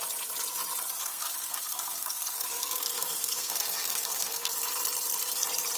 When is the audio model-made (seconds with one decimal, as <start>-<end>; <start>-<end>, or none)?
1.0-4.5